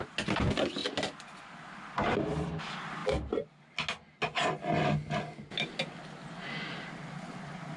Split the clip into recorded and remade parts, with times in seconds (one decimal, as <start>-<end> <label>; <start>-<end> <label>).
0.0-7.8 recorded